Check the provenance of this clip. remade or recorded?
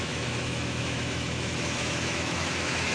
remade